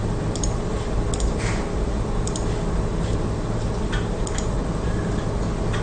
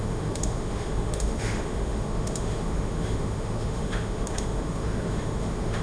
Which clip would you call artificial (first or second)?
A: second